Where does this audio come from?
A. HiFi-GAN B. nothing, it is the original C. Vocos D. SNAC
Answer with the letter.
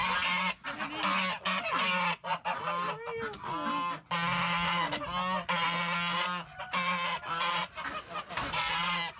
B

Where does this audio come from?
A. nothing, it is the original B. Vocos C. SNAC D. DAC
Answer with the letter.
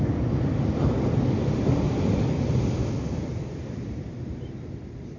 A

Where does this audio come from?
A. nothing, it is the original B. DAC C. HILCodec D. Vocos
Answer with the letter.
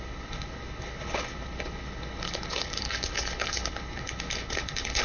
C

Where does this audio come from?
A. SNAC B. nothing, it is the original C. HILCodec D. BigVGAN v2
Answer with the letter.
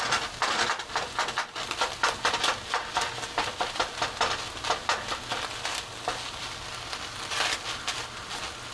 B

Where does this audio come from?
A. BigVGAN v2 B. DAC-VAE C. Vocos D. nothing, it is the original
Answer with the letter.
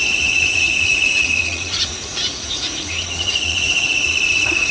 C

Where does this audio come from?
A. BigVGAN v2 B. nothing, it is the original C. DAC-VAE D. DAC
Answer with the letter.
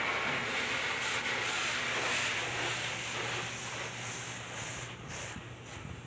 B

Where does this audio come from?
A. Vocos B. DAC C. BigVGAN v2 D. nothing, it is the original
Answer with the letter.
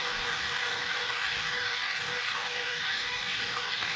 B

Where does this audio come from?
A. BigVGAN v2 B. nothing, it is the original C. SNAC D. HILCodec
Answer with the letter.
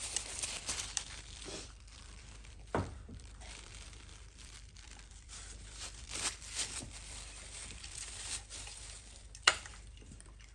A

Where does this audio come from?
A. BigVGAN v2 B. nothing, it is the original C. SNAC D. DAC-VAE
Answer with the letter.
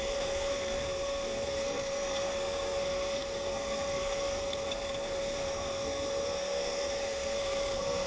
C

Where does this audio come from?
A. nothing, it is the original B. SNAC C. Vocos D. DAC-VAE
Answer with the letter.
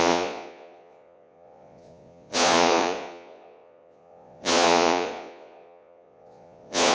C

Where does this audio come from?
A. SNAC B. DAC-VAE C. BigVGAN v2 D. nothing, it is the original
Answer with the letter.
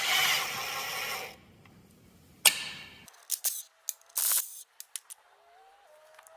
D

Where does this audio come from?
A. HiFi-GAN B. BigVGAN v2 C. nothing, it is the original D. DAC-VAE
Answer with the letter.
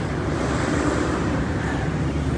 B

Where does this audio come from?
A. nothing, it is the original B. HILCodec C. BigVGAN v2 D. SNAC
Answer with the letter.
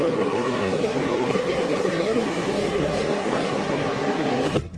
D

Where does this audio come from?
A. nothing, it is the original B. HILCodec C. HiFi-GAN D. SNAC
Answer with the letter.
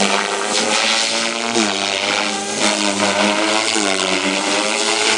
A